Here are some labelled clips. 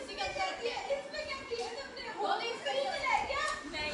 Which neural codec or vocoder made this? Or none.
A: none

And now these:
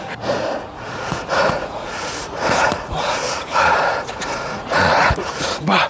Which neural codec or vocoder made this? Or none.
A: vocoder, Vocos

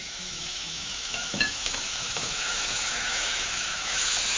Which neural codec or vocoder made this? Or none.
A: autoencoder, DAC-VAE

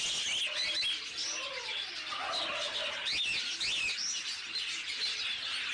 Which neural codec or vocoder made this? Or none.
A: none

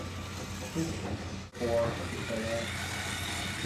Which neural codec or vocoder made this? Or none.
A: none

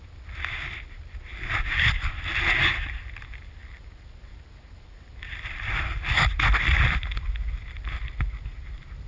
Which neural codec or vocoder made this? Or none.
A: none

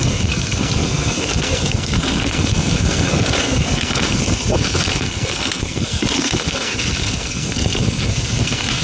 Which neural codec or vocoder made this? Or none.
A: codec, SNAC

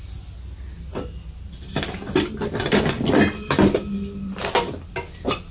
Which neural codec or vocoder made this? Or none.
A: none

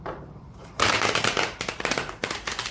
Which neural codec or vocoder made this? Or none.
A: vocoder, BigVGAN v2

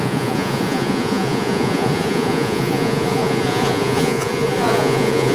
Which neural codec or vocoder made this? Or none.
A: vocoder, Vocos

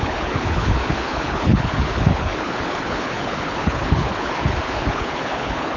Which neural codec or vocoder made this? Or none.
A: codec, HILCodec